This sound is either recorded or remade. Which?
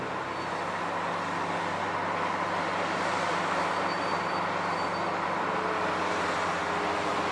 recorded